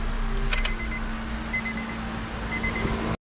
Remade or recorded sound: recorded